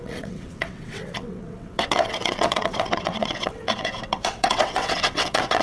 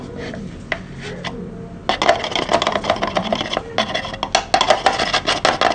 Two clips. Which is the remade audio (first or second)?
first